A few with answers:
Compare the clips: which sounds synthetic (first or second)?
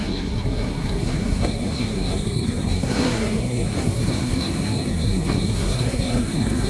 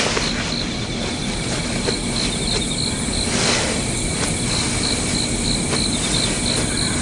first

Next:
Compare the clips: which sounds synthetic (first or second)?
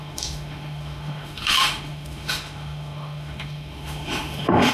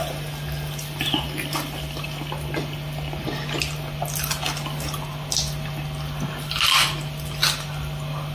first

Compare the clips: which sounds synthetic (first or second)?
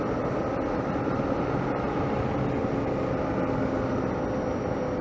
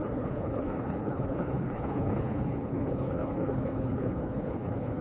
second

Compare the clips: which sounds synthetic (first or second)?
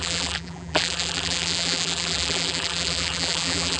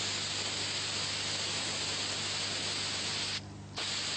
first